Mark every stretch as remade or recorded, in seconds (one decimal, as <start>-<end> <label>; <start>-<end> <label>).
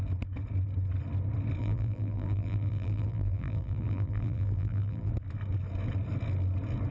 0.0-1.6 recorded; 1.6-5.1 remade; 5.1-6.9 recorded